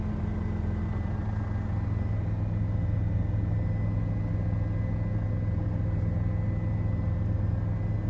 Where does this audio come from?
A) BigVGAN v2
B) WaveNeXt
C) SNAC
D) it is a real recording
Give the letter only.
D